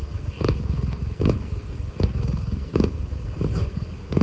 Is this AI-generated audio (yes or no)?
yes